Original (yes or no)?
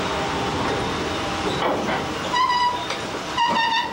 yes